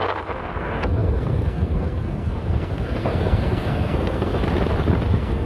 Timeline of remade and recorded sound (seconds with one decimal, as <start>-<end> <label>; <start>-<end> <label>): 0.0-4.3 remade; 4.3-5.1 recorded; 5.1-5.5 remade